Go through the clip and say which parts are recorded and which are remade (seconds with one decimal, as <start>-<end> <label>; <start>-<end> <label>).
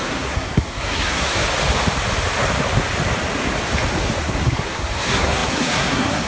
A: 0.0-1.4 remade; 1.4-4.2 recorded; 4.2-6.3 remade